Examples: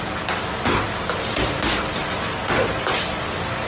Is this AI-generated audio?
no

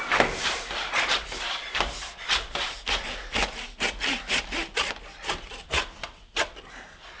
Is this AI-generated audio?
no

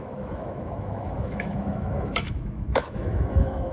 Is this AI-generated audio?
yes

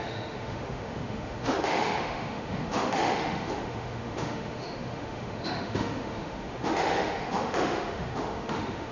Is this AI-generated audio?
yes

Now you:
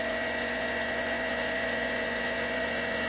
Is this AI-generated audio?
yes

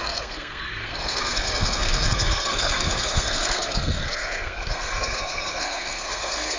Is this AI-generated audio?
yes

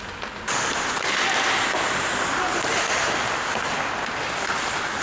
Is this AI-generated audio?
no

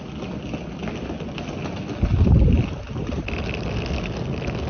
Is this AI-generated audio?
no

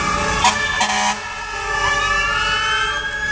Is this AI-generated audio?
no